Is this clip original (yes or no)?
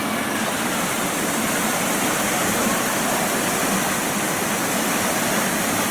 yes